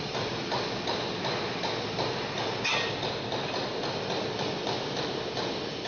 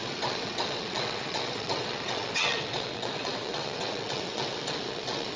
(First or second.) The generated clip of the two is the second